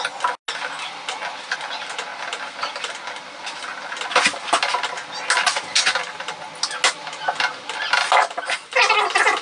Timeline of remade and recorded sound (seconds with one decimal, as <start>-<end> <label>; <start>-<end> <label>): 0.0-9.4 recorded